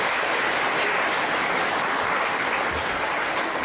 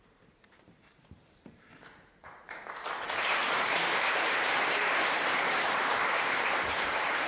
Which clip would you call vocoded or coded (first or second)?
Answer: second